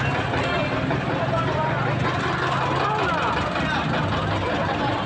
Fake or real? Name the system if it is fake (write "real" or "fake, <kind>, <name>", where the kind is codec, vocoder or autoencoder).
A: real